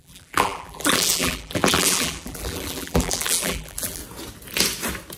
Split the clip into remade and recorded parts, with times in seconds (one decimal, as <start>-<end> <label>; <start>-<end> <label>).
0.0-4.0 remade; 4.0-5.2 recorded